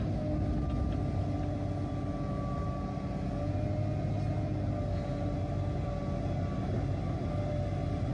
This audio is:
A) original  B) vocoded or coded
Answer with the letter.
A